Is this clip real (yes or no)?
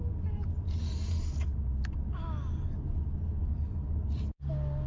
yes